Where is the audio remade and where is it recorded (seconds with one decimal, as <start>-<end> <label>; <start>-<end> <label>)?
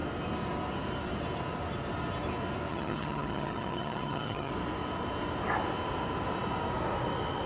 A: 0.0-2.7 recorded; 2.7-4.5 remade; 4.5-7.5 recorded